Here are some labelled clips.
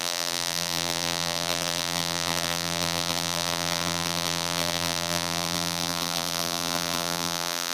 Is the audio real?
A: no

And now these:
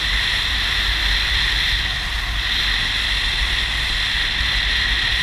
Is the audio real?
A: yes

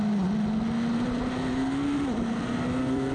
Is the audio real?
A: yes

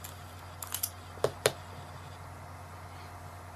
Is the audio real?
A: yes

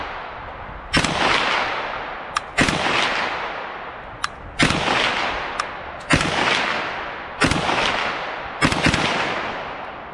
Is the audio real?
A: yes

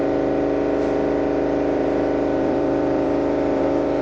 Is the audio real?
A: no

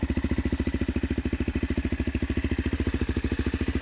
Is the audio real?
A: yes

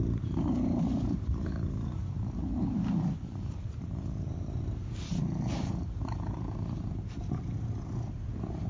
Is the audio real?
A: no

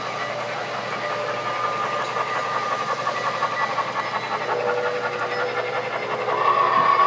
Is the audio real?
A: yes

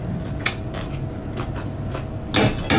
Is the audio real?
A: yes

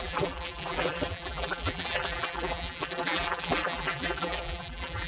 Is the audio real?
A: no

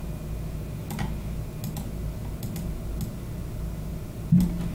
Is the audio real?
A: yes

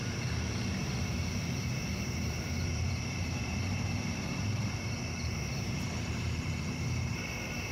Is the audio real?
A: no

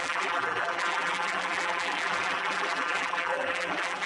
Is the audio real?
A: no